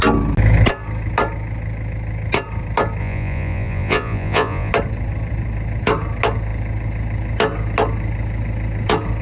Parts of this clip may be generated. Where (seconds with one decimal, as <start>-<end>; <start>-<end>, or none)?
3.0-4.7